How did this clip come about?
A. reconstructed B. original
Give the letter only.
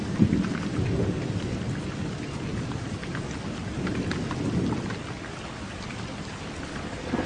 B